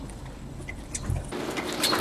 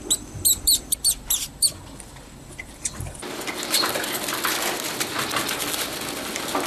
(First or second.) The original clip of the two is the first